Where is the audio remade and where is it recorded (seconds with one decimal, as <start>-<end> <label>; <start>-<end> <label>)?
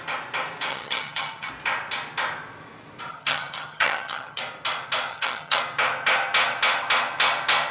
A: 0.0-0.7 recorded; 0.7-1.5 remade; 1.5-3.1 recorded; 3.1-4.4 remade; 4.4-5.1 recorded; 5.1-5.6 remade; 5.6-7.7 recorded